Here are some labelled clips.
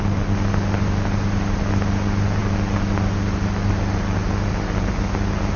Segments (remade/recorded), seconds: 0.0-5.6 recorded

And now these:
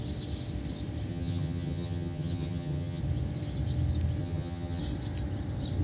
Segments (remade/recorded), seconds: 0.0-1.1 recorded; 1.1-3.0 remade; 3.0-4.2 recorded; 4.2-4.8 remade; 4.8-5.8 recorded

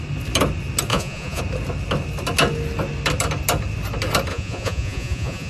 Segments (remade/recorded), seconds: 0.0-0.9 recorded; 0.9-1.4 remade; 1.4-4.3 recorded; 4.3-5.5 remade

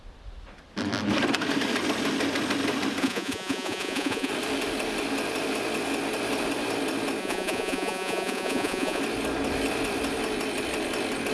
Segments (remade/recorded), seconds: 0.0-3.0 recorded; 3.0-4.3 remade; 4.3-7.2 recorded; 7.2-9.0 remade; 9.0-11.3 recorded

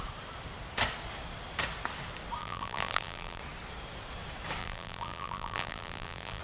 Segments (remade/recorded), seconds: 0.0-2.4 recorded; 2.4-3.4 remade; 3.4-4.6 recorded; 4.6-6.4 remade

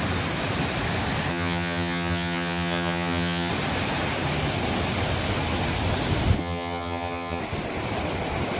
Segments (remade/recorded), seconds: 0.0-1.3 recorded; 1.3-3.5 remade; 3.5-6.4 recorded; 6.4-7.4 remade; 7.4-8.6 recorded

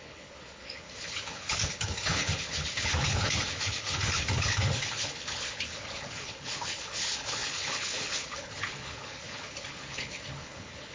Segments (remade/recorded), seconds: 0.0-10.9 remade